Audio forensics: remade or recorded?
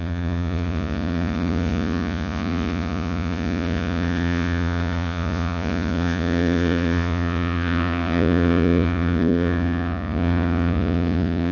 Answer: remade